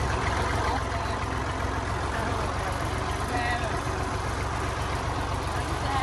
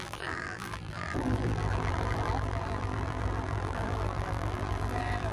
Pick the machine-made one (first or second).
second